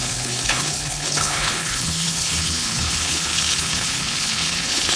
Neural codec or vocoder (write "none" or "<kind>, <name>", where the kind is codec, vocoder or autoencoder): codec, HILCodec